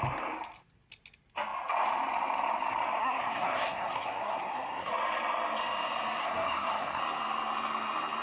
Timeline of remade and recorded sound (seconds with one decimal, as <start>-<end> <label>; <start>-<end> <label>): 0.0-3.0 recorded; 3.0-4.9 remade; 4.9-6.2 recorded; 6.2-7.0 remade; 7.0-8.2 recorded